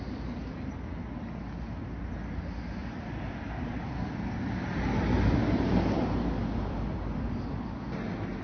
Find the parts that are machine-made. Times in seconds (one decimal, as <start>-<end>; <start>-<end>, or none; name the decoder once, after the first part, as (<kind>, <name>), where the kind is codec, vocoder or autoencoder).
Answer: 1.0-1.6 (vocoder, BigVGAN v2); 2.8-5.7